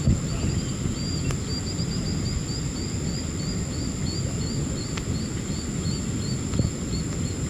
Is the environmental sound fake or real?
real